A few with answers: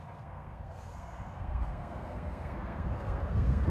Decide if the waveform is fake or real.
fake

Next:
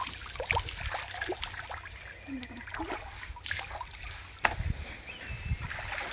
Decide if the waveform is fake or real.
real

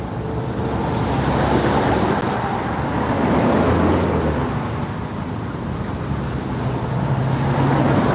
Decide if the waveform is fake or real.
real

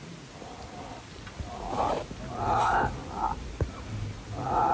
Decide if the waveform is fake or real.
real